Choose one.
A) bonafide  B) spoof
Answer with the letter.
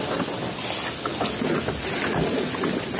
A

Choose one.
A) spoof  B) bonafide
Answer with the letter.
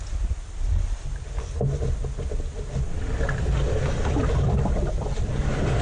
B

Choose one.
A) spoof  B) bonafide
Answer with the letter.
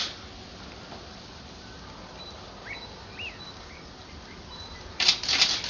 B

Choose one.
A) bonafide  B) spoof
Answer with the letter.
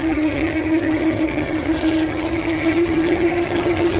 B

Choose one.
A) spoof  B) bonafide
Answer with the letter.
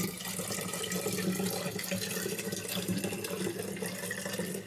B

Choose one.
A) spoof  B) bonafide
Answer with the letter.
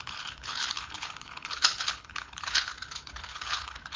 A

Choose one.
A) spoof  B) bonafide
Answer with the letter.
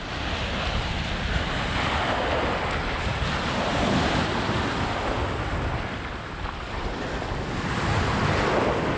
B